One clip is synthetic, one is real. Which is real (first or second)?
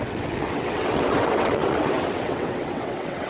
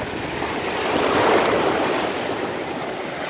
second